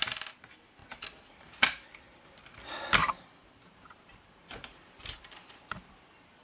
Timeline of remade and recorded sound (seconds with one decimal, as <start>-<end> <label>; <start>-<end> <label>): 0.0-3.4 recorded; 3.4-6.4 remade